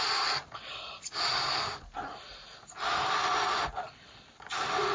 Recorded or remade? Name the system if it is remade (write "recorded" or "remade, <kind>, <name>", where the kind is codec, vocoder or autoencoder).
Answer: recorded